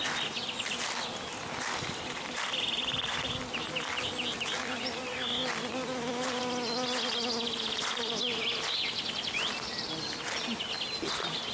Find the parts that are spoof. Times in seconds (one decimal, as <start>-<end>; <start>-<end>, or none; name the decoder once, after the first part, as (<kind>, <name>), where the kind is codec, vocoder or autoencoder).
none